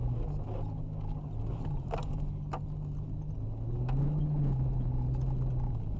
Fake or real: real